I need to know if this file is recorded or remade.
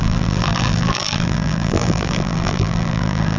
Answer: remade